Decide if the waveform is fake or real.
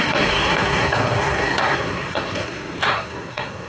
fake